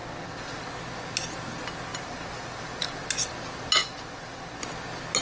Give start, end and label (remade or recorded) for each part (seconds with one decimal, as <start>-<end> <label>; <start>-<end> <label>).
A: 0.0-0.6 remade; 0.6-1.9 recorded; 1.9-3.0 remade; 3.0-3.8 recorded; 3.8-4.6 remade; 4.6-5.2 recorded